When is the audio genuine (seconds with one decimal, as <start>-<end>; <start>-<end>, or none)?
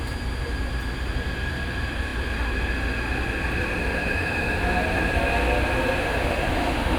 0.0-3.8; 4.6-6.0